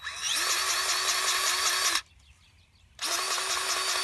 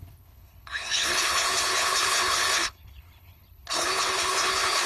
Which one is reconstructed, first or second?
second